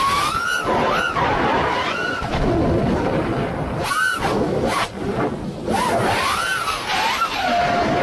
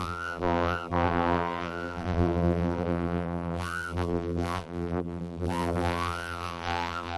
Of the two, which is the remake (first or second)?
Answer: second